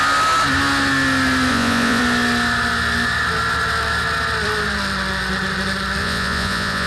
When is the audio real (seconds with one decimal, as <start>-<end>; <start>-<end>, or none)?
0.0-1.5; 2.0-6.0